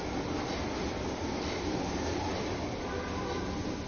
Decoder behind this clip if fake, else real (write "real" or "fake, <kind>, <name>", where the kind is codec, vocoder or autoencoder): real